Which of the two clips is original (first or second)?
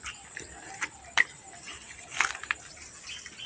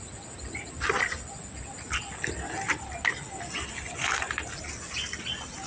second